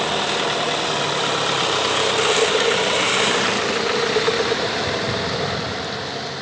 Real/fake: real